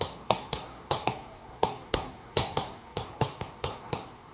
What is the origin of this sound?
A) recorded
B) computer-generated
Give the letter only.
B